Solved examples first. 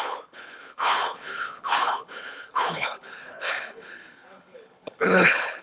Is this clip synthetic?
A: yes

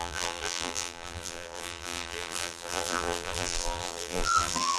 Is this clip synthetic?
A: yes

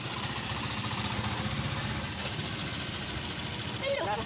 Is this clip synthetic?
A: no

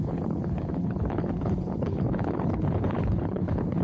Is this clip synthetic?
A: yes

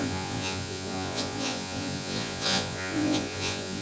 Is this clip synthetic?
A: yes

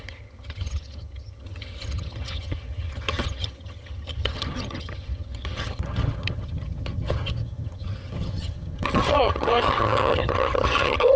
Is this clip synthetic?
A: yes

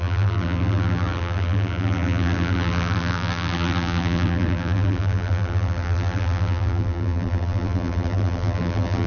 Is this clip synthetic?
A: yes